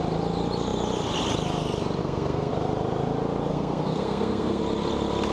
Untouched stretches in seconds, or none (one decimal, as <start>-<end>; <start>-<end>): 0.0-2.0; 2.5-3.5; 4.6-5.3